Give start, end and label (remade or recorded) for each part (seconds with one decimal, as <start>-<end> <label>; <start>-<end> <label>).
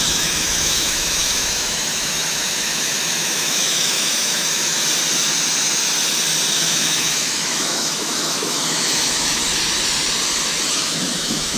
0.0-4.8 remade; 4.8-6.5 recorded; 6.5-9.4 remade; 9.4-10.7 recorded; 10.7-11.6 remade